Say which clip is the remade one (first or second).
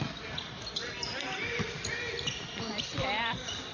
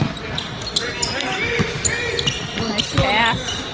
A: first